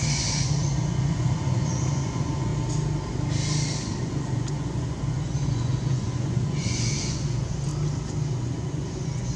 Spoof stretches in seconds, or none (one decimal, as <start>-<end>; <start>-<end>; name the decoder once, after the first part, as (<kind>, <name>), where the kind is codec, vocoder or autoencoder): 0.0-2.5 (vocoder, Vocos); 4.0-7.7; 8.4-9.4